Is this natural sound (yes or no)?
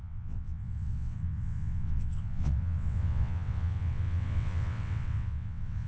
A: no